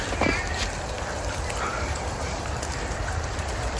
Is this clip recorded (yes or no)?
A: no